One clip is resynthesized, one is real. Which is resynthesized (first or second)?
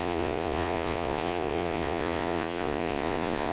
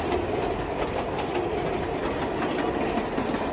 first